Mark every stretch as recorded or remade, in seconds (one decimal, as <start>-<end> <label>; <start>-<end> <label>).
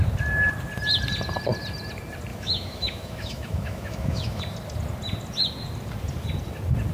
0.0-2.3 recorded; 2.3-4.4 remade; 4.4-6.9 recorded